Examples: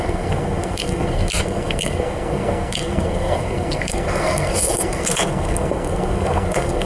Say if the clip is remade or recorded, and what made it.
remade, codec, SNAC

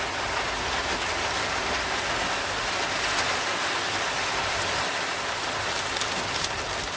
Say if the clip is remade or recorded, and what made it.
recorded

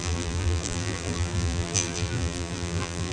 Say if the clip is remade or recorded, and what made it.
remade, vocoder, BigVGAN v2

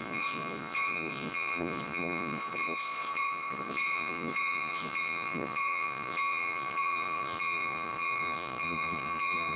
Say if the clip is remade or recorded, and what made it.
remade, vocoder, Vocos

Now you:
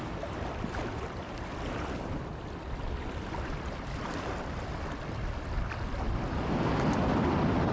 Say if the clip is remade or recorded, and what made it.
recorded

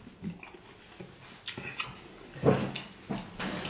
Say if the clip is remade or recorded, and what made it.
recorded